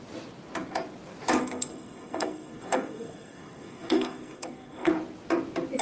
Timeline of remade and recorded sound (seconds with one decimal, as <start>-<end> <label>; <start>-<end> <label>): 0.0-1.4 recorded; 1.4-4.9 remade; 4.9-5.8 recorded